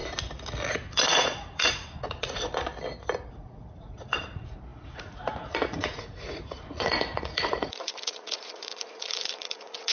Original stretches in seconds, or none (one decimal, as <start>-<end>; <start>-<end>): 0.0-0.7; 2.7-3.3